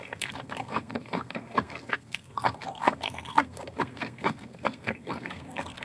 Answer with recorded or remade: remade